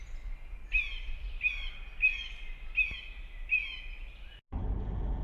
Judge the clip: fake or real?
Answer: real